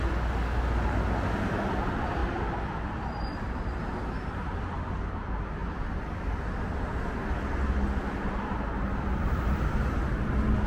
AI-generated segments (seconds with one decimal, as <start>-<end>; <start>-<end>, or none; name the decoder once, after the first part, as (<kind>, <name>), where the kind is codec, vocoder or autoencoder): 2.2-3.2 (vocoder, BigVGAN v2)